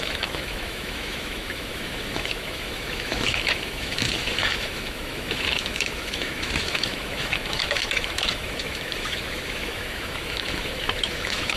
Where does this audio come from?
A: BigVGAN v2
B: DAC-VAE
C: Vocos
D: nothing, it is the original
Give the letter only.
B